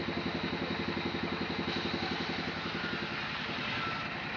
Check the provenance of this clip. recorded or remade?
recorded